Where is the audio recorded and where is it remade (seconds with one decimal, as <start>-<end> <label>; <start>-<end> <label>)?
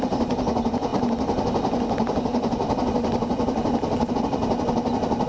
0.0-5.3 recorded